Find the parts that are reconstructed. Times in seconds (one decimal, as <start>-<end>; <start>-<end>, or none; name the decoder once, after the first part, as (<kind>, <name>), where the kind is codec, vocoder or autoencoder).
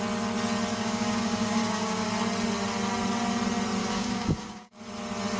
0.7-2.1 (codec, DAC); 3.8-4.8